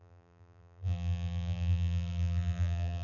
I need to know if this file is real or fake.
fake